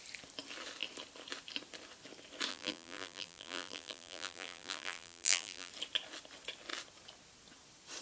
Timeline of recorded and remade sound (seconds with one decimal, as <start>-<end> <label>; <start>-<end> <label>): 0.0-2.5 recorded; 2.5-5.7 remade; 5.7-8.0 recorded